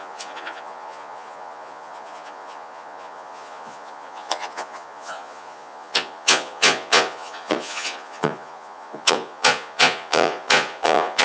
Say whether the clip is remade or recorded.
remade